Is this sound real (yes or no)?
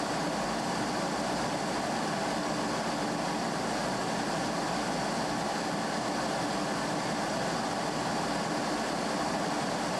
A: yes